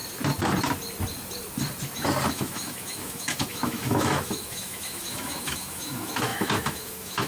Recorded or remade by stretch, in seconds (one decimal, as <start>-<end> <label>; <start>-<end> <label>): 0.0-2.3 recorded; 2.3-7.3 remade

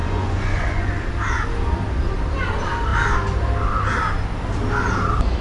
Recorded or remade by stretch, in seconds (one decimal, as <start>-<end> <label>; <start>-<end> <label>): 0.0-0.9 remade; 0.9-5.4 recorded